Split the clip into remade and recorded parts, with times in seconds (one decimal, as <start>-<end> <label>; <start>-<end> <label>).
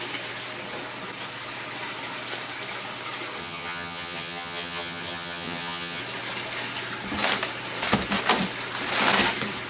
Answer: 0.0-3.4 recorded; 3.4-6.0 remade; 6.0-9.7 recorded